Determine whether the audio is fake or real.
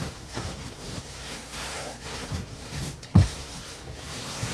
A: fake